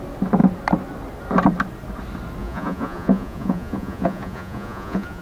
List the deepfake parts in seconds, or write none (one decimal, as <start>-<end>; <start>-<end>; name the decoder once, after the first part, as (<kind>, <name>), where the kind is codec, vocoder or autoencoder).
2.4-5.2 (vocoder, Vocos)